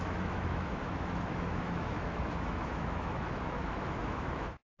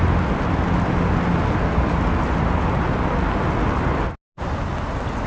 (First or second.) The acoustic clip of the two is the second